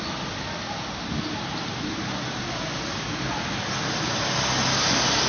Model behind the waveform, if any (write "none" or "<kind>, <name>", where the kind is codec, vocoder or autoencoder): none